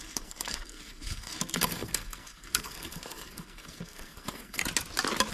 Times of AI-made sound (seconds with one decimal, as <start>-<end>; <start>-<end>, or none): 0.0-4.6